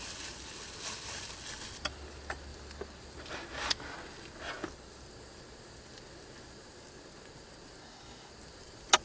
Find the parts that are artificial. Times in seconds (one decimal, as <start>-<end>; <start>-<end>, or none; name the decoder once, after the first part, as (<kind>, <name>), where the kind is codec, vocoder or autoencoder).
7.8-8.3 (codec, DAC)